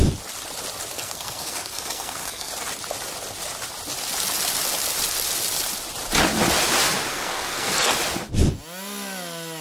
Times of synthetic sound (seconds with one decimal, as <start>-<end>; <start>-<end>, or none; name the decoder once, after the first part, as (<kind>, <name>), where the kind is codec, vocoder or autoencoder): 0.9-2.5 (codec, SNAC); 7.1-8.0